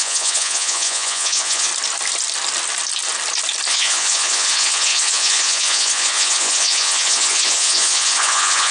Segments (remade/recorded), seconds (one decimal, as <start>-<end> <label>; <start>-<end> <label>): 0.0-1.7 remade; 1.7-3.7 recorded; 3.7-8.7 remade